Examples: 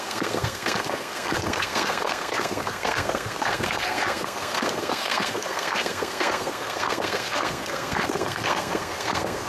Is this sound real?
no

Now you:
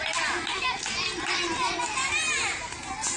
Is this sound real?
yes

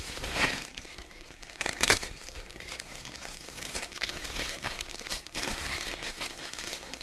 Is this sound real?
no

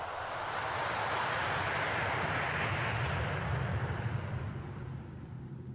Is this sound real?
yes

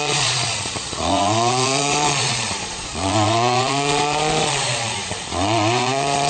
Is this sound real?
no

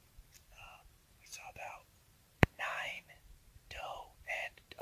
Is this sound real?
no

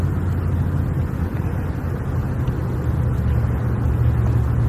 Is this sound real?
yes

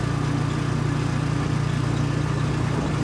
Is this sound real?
yes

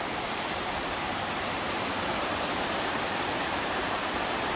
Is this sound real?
no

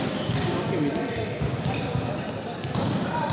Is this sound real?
yes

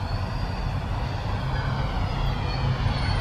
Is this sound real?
yes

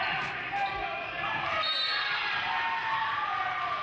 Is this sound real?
yes